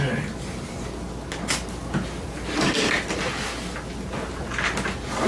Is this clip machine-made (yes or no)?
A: no